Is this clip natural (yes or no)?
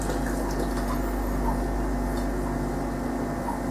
yes